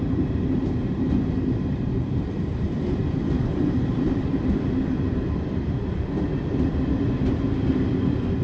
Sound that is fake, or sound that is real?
fake